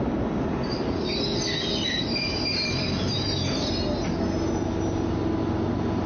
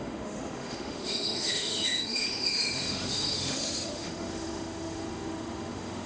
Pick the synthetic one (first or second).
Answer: second